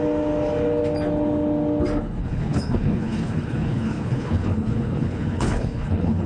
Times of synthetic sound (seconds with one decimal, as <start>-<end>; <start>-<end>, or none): 2.2-6.3